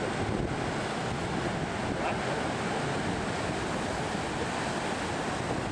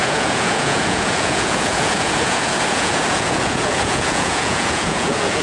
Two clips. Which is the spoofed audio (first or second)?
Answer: second